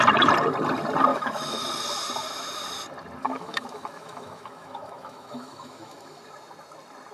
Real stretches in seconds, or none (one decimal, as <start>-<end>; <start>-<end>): 0.0-1.1; 1.6-3.2; 6.2-7.1